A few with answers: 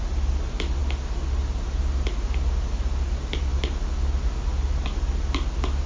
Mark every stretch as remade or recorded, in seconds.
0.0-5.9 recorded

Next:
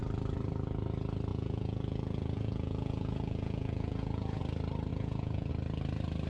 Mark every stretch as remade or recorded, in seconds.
0.0-1.3 recorded; 1.3-4.4 remade; 4.4-4.9 recorded; 4.9-5.5 remade; 5.5-6.3 recorded

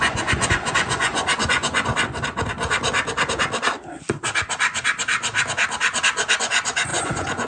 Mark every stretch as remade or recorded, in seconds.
0.0-1.9 remade; 1.9-6.4 recorded; 6.4-7.5 remade

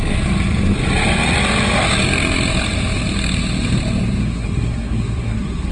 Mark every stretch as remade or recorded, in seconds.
0.0-4.2 recorded; 4.2-5.7 remade

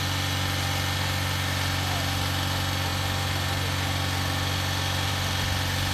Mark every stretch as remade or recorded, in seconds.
0.0-5.9 recorded